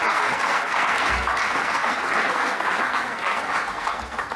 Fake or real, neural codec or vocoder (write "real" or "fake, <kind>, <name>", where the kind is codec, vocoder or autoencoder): fake, codec, SNAC